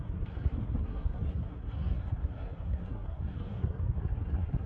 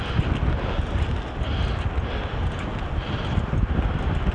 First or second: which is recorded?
second